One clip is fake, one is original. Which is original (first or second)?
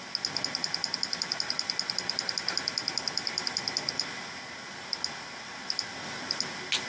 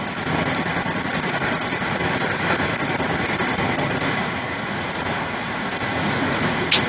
first